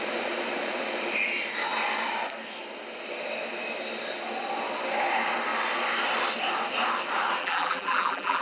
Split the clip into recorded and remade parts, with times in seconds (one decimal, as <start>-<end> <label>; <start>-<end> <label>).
0.0-7.4 recorded; 7.4-8.4 remade